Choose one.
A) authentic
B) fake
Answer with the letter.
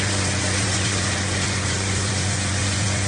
B